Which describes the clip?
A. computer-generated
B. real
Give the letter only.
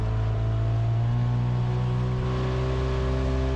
B